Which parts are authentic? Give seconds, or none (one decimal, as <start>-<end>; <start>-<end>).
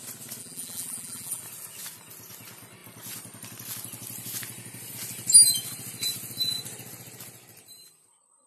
0.0-0.4; 1.4-8.5